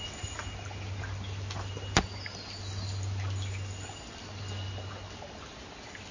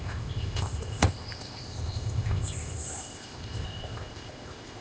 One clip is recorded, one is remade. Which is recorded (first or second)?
first